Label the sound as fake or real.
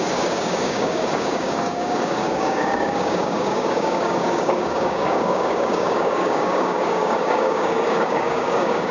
fake